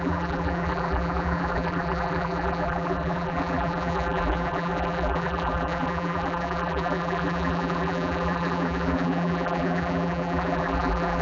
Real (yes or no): no